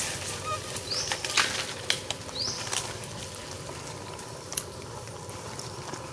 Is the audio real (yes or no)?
yes